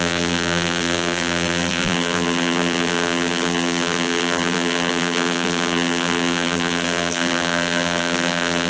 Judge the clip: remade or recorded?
remade